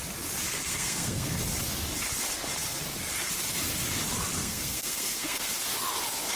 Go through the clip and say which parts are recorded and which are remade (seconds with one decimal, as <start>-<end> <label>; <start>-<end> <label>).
0.0-0.5 recorded; 0.5-1.4 remade; 1.4-4.4 recorded; 4.4-5.5 remade; 5.5-6.4 recorded